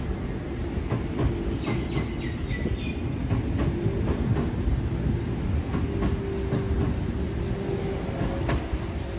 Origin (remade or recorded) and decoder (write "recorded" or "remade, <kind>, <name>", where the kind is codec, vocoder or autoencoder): recorded